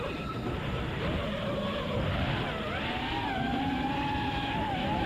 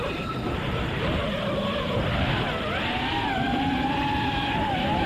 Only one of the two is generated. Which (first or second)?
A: second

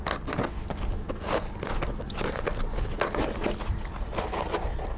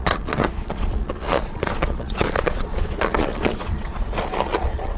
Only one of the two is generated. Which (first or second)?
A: second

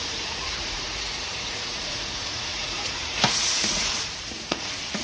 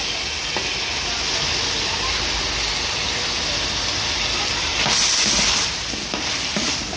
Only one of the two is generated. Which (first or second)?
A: first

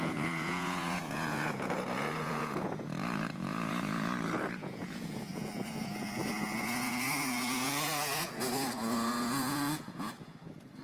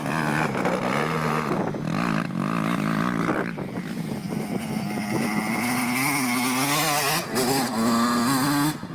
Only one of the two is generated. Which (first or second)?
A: first